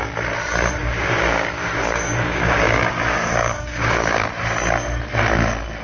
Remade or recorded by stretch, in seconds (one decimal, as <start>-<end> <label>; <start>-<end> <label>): 0.0-0.8 recorded; 0.8-4.3 remade; 4.3-5.8 recorded